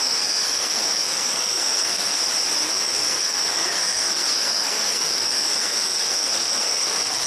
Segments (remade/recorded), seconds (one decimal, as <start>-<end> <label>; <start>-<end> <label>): 0.0-2.2 remade; 2.2-2.7 recorded; 2.7-7.3 remade